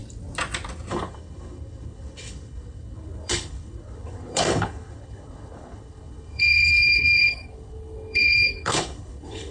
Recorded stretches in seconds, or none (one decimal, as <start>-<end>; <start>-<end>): 0.0-0.9

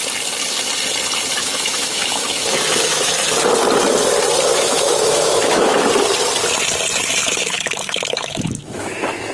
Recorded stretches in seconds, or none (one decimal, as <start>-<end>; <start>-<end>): 0.0-1.4; 3.1-4.5; 5.9-7.2

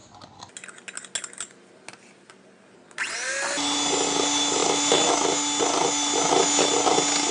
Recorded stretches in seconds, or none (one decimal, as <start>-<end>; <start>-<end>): 0.0-7.3

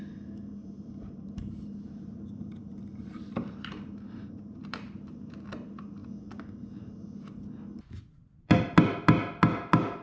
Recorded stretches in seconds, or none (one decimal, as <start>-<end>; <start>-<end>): 0.0-0.6; 5.1-10.0

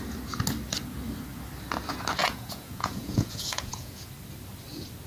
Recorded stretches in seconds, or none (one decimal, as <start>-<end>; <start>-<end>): 0.0-2.2; 4.1-5.1